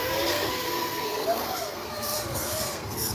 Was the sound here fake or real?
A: fake